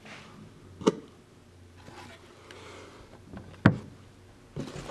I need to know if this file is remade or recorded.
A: recorded